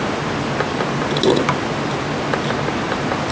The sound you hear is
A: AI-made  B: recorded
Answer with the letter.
B